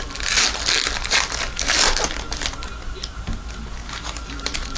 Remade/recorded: recorded